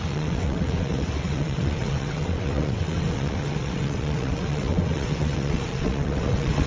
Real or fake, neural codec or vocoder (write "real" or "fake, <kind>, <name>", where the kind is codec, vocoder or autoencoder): fake, vocoder, WaveNeXt